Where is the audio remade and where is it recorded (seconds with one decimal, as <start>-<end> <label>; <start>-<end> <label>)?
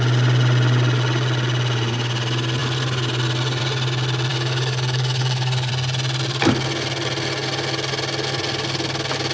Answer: 0.0-4.3 recorded; 4.3-5.7 remade; 5.7-9.3 recorded